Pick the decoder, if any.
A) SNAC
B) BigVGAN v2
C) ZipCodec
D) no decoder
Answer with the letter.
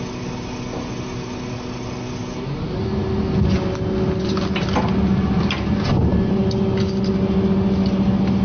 D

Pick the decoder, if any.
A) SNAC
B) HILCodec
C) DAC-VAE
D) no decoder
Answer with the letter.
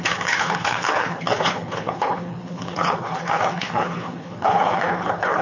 B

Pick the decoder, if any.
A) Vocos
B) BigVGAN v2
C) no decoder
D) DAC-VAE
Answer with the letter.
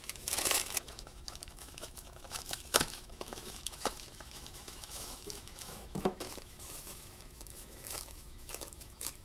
D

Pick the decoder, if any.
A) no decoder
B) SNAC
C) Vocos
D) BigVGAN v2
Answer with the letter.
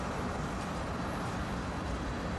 D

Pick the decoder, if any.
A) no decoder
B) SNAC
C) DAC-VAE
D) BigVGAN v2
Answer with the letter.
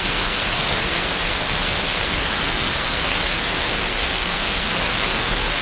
B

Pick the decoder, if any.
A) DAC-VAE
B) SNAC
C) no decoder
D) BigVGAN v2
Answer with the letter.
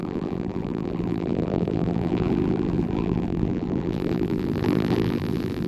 D